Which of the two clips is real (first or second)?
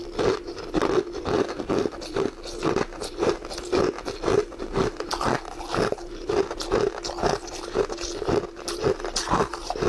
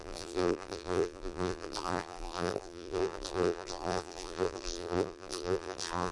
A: first